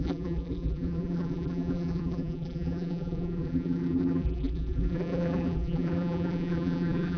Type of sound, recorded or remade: remade